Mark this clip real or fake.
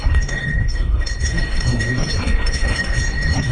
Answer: fake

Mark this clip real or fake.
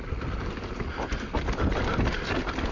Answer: real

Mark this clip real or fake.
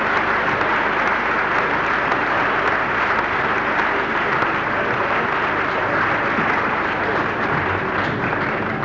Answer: real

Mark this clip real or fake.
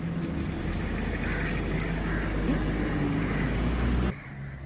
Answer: real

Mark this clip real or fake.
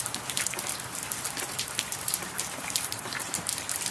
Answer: fake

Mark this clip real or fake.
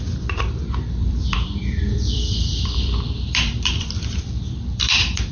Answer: fake